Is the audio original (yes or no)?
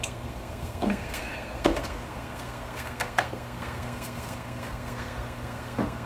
no